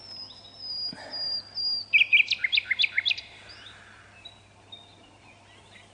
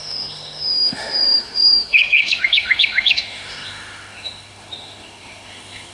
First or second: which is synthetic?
second